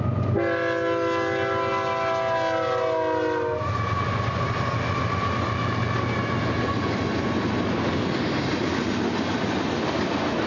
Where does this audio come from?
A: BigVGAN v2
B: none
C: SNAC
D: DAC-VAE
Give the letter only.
B